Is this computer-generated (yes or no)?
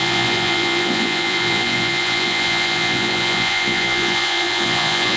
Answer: yes